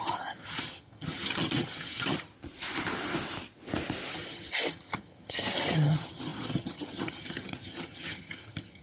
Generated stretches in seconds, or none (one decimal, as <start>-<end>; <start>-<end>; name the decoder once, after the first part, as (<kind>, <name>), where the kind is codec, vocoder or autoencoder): 0.0-2.3 (vocoder, HiFi-GAN); 4.1-8.8